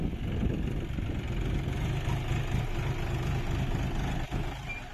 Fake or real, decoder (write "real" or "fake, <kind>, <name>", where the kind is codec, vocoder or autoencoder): real